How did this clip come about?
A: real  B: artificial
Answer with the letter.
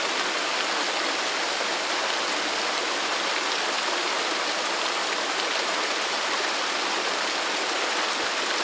A